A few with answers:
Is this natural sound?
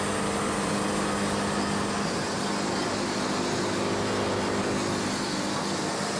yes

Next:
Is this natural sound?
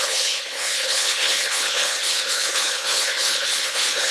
no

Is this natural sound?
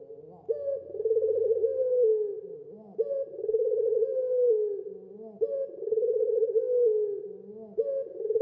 yes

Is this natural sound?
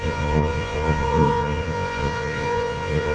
no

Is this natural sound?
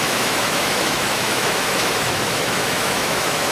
no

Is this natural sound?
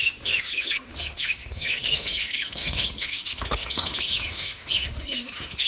no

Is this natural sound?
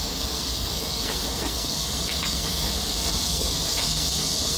no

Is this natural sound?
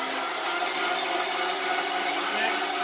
yes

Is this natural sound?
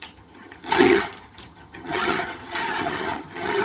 no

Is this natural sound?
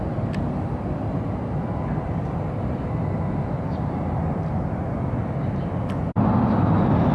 yes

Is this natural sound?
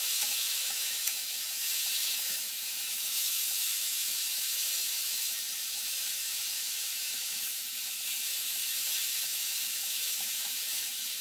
no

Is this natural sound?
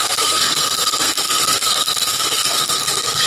no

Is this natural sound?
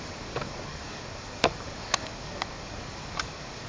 no